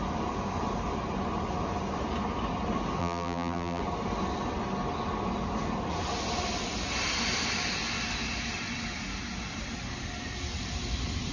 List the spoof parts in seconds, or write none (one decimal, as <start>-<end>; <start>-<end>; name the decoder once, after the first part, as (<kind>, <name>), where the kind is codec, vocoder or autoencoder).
3.0-3.8 (vocoder, BigVGAN v2)